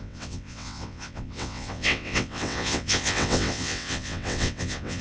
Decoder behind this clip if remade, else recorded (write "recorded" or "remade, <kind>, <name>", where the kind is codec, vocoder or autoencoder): remade, vocoder, WaveNeXt